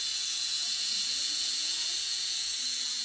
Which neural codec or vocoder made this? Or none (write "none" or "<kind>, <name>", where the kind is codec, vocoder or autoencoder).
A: vocoder, Vocos